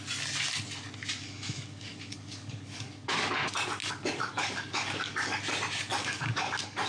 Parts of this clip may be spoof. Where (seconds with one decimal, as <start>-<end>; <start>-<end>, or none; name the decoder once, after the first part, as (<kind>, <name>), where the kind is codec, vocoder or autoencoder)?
1.2-3.3 (codec, DAC); 3.8-5.4; 5.9-6.9